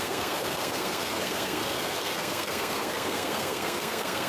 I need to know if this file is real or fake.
fake